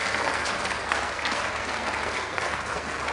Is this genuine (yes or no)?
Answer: no